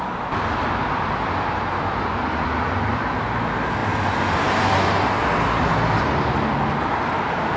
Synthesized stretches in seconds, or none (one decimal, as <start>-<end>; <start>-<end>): none